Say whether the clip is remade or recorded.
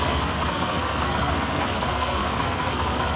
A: remade